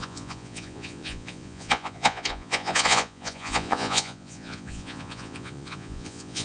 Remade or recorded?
remade